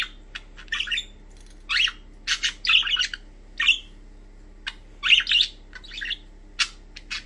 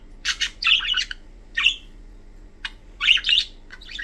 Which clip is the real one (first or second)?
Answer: first